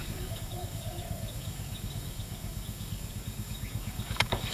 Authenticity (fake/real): fake